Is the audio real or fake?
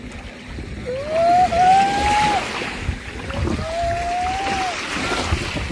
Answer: real